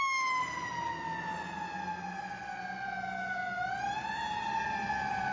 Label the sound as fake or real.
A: real